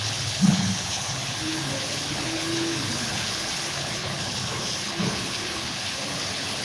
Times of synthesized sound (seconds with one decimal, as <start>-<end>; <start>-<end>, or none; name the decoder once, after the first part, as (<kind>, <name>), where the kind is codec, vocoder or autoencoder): 0.0-6.6 (codec, HILCodec)